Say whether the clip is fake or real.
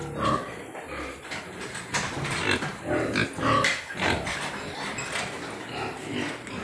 real